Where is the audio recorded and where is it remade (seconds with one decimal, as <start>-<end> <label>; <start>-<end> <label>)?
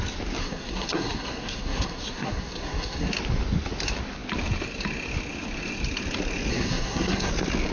0.0-0.4 recorded; 0.4-3.1 remade; 3.1-6.5 recorded; 6.5-7.3 remade; 7.3-7.7 recorded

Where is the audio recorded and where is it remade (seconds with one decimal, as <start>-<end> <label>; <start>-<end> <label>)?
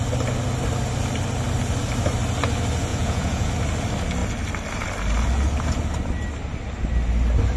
0.0-2.9 recorded; 2.9-3.5 remade; 3.5-7.6 recorded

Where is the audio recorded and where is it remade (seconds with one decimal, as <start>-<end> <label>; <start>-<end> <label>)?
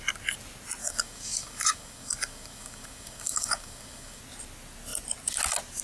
0.0-0.8 recorded; 0.8-4.2 remade; 4.2-5.8 recorded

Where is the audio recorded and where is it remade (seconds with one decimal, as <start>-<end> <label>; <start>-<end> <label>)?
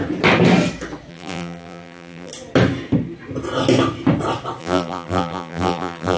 0.0-1.1 recorded; 1.1-2.3 remade; 2.3-4.6 recorded; 4.6-6.2 remade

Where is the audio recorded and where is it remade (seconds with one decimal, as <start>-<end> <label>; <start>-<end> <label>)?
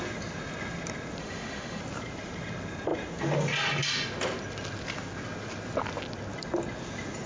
0.0-1.2 recorded; 1.2-1.8 remade; 1.8-7.3 recorded